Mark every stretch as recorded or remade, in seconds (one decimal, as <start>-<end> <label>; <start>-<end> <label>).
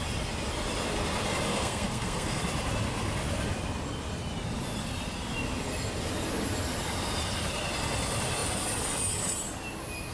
0.0-1.5 recorded; 1.5-2.4 remade; 2.4-10.1 recorded